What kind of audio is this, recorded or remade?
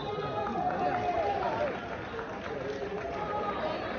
recorded